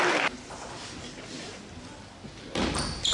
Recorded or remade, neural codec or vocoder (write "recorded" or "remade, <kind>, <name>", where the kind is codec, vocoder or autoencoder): recorded